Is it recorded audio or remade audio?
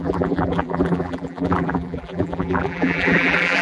remade